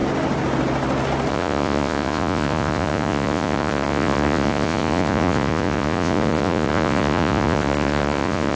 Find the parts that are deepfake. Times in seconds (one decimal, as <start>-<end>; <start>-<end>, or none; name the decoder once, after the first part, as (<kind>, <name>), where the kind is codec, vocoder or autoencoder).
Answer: 1.3-8.6 (vocoder, Vocos)

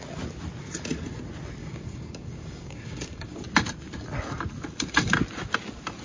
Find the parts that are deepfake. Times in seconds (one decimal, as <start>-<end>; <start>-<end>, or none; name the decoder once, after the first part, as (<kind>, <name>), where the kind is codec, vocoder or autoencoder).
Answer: 1.6-3.4 (codec, DAC)